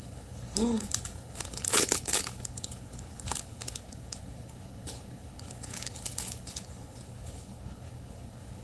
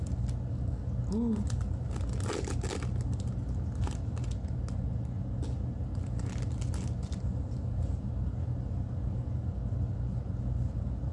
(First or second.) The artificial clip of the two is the first